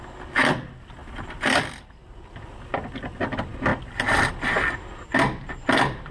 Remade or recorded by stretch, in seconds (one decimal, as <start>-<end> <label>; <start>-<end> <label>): 0.0-6.1 recorded